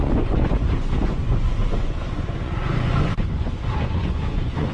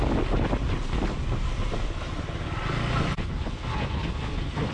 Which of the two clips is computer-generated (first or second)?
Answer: first